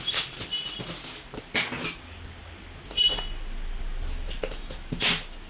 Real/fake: real